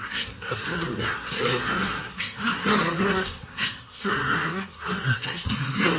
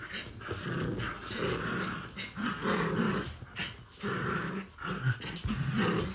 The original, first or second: second